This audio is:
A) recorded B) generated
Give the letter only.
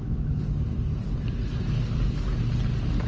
A